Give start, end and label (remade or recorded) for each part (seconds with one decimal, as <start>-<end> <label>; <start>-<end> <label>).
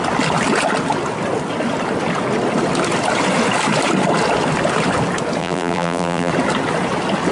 0.0-5.4 recorded; 5.4-6.3 remade; 6.3-7.3 recorded